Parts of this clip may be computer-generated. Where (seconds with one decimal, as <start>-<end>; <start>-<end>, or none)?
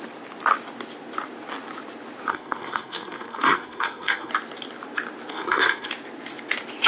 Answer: 2.3-4.3; 5.3-5.9